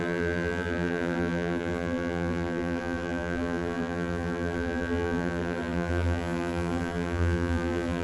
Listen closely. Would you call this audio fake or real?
fake